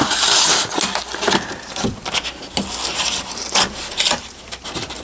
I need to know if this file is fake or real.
real